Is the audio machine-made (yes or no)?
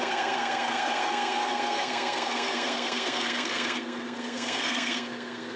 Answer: yes